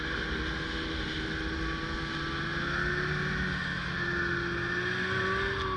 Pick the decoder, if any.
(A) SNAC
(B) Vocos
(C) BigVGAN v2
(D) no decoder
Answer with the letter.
D